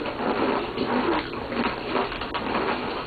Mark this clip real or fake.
real